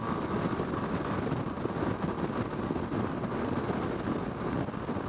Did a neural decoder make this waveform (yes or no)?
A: no